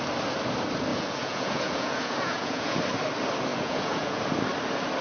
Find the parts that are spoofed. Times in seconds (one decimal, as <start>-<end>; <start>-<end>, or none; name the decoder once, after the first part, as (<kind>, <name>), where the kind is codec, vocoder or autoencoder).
0.9-2.8 (vocoder, Vocos); 3.5-4.2